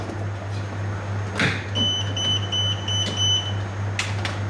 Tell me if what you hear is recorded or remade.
recorded